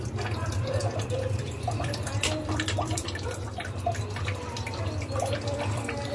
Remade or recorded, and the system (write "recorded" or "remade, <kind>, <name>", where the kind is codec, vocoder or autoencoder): remade, vocoder, BigVGAN v2